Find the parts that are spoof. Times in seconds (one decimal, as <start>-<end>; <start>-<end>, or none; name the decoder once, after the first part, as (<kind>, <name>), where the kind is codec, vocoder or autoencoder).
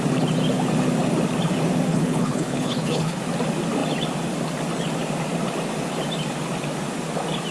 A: 1.9-3.2 (codec, HILCodec)